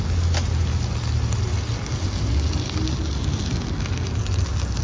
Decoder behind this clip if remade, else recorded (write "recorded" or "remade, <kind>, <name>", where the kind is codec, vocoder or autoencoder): recorded